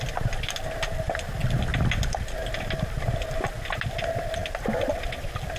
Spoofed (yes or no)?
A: no